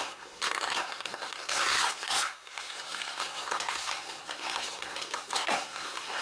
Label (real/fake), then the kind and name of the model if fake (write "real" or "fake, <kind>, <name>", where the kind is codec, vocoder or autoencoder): fake, codec, SNAC